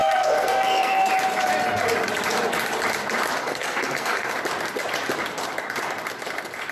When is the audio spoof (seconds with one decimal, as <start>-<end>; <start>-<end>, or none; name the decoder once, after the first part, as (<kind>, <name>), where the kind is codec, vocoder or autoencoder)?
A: 0.0-1.1 (codec, SNAC); 3.4-4.3